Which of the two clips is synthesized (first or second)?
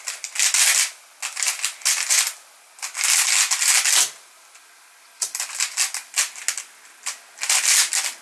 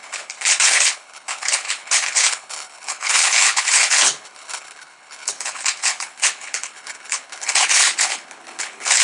second